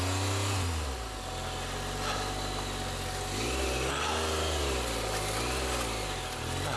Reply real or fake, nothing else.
real